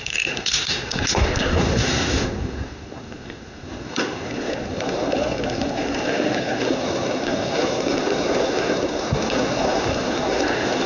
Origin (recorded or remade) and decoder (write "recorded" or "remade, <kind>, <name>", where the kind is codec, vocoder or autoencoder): remade, codec, SNAC